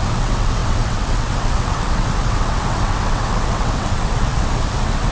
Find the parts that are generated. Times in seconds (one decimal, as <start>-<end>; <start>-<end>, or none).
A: 0.0-5.1